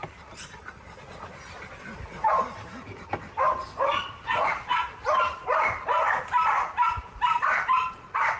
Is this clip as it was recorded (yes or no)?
yes